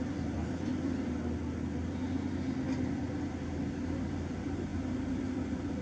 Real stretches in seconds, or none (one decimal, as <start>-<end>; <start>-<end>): 0.7-3.3